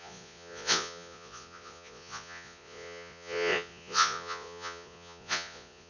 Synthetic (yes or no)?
yes